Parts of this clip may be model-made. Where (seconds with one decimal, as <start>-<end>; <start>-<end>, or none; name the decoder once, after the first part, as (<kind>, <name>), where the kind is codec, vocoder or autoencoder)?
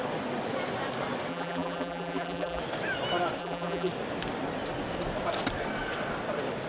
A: 1.3-2.6 (vocoder, BigVGAN v2); 3.4-3.9